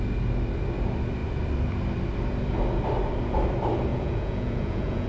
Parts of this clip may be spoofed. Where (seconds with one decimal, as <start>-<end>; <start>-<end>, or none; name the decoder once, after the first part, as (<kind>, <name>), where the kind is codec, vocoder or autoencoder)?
3.9-5.1 (vocoder, Vocos)

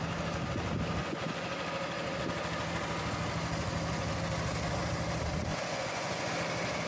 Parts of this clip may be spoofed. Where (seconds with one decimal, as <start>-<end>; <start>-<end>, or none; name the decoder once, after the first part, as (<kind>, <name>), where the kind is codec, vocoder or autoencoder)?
1.0-1.5 (vocoder, Vocos); 5.5-6.3

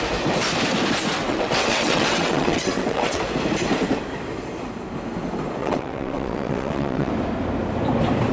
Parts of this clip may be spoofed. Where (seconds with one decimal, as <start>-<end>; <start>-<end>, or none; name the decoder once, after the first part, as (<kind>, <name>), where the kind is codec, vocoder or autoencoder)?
1.2-3.2 (vocoder, WaveNeXt); 5.6-7.1

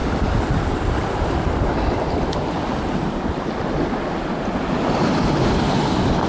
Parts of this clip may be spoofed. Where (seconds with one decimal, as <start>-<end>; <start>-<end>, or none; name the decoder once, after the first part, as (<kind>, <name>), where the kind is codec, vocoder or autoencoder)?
none

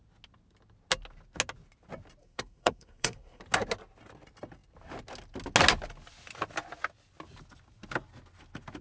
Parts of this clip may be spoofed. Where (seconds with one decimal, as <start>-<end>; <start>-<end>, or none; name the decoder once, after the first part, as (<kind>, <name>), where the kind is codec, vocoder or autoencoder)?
2.2-3.4 (codec, SNAC)